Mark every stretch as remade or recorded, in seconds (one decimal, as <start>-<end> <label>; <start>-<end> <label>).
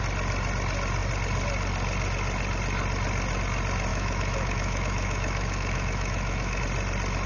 0.0-3.9 recorded; 3.9-6.6 remade; 6.6-7.3 recorded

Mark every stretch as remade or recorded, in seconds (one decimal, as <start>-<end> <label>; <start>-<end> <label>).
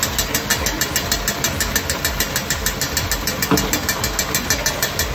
0.0-5.1 recorded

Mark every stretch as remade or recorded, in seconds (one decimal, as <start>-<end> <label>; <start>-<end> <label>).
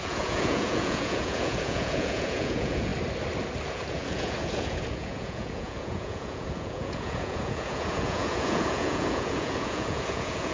0.0-2.9 remade; 2.9-3.7 recorded; 3.7-10.5 remade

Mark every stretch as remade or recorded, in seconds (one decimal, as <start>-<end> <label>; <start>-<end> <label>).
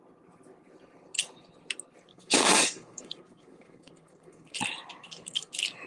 0.0-2.1 recorded; 2.1-4.6 remade; 4.6-5.0 recorded; 5.0-5.5 remade; 5.5-5.9 recorded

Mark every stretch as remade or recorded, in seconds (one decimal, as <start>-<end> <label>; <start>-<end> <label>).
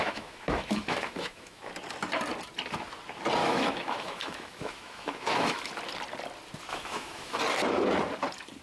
0.0-1.7 remade; 1.7-3.4 recorded; 3.4-5.7 remade; 5.7-6.7 recorded; 6.7-7.4 remade; 7.4-8.6 recorded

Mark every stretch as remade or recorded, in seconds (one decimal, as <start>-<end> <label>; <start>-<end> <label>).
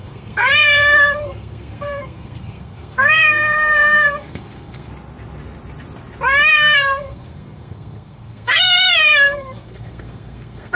0.0-4.9 remade; 4.9-6.5 recorded; 6.5-10.8 remade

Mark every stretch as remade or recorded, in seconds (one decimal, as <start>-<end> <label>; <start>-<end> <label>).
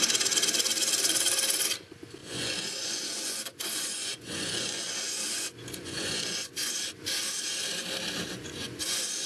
0.0-2.2 recorded; 2.2-6.7 remade; 6.7-8.3 recorded; 8.3-9.3 remade